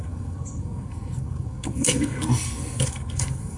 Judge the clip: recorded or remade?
remade